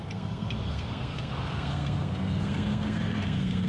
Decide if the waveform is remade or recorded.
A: remade